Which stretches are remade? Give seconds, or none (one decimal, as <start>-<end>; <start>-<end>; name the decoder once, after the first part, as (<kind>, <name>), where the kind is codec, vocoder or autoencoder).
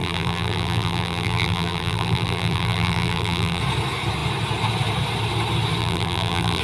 0.0-3.6 (vocoder, BigVGAN v2); 5.8-6.6